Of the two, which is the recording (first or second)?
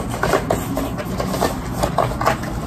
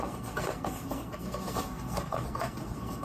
first